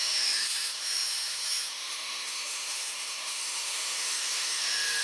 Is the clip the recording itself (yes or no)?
no